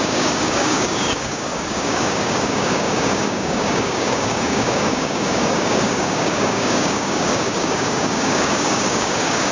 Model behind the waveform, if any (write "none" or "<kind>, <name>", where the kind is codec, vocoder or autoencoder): codec, DAC